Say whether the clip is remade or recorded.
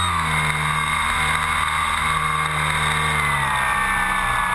recorded